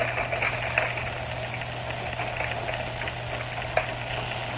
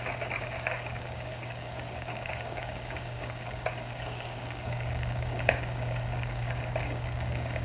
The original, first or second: first